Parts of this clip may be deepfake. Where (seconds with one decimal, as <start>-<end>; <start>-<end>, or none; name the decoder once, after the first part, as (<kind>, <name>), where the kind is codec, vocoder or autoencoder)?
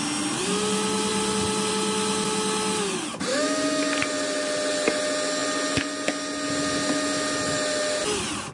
3.3-3.9 (autoencoder, DAC-VAE)